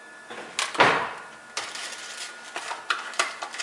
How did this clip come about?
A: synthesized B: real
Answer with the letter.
B